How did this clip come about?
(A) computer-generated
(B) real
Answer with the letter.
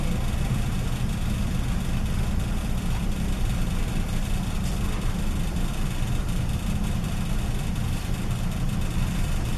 A